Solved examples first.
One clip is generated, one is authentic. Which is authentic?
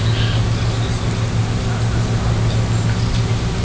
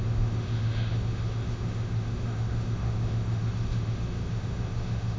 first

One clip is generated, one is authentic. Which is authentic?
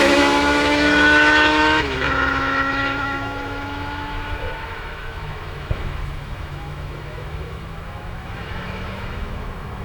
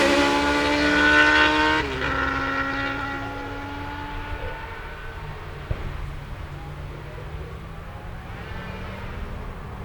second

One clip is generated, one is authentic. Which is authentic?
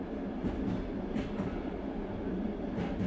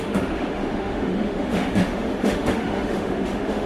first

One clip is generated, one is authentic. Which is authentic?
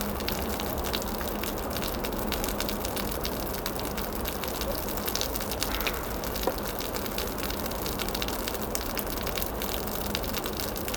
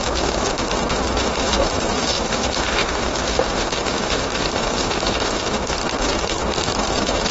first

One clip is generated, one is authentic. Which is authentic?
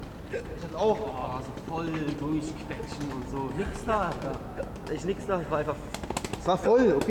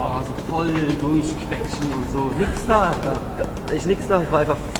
first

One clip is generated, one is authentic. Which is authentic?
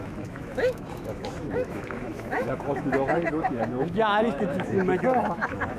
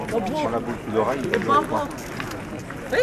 second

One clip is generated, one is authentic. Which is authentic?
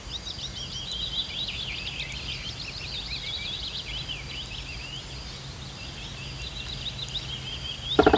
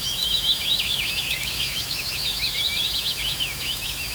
first